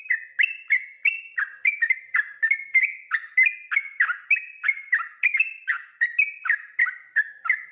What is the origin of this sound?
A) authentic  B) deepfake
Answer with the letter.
A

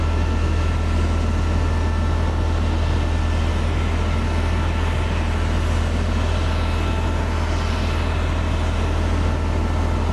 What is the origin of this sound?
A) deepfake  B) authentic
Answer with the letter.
B